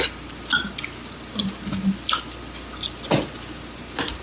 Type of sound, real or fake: real